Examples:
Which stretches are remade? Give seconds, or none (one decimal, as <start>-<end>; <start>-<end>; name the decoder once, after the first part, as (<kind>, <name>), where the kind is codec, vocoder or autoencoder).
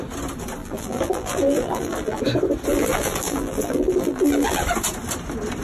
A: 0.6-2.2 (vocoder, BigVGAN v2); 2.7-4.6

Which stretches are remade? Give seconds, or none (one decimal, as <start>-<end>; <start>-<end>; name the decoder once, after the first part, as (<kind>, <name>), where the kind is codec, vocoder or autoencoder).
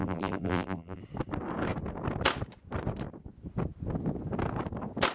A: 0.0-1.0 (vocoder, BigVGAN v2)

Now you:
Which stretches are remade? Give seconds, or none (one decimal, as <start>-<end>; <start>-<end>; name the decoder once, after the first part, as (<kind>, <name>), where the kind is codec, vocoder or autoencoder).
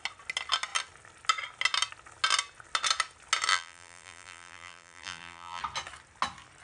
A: 3.5-5.6 (vocoder, BigVGAN v2)